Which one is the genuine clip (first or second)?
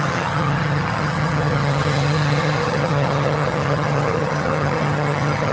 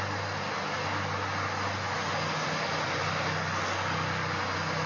second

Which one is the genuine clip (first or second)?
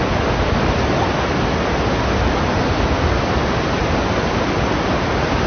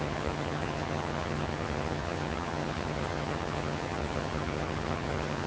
first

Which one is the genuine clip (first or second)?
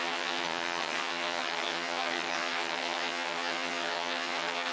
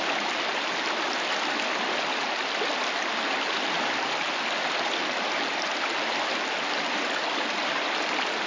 second